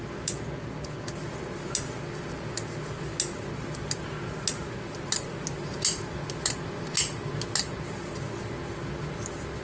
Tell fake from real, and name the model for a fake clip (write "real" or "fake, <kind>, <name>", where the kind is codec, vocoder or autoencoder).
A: real